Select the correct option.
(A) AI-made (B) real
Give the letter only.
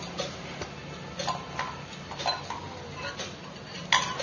B